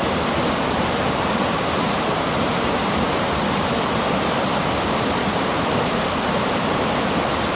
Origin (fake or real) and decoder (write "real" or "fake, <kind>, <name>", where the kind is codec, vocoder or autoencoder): fake, vocoder, BigVGAN v2